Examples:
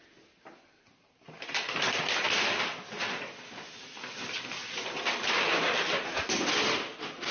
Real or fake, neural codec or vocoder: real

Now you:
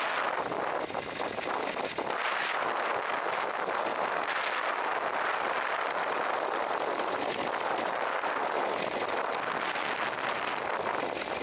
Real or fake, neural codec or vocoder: real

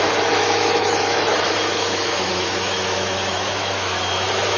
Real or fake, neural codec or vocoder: fake, autoencoder, DAC-VAE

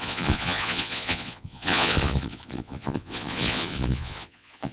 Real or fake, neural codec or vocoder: fake, vocoder, Vocos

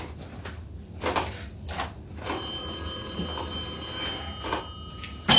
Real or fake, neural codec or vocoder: real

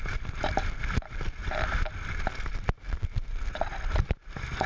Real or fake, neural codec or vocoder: real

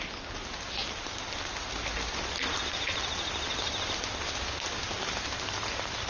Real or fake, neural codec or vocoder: real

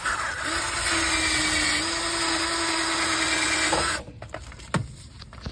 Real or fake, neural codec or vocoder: real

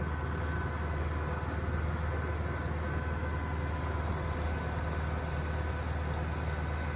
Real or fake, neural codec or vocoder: real